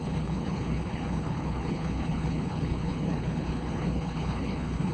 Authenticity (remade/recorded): remade